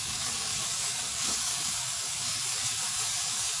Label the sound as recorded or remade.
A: remade